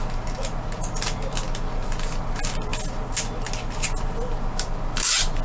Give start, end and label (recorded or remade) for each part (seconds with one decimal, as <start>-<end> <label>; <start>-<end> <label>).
0.0-5.4 recorded